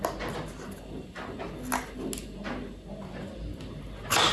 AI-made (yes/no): no